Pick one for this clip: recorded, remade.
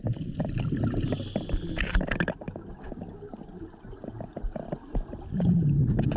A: recorded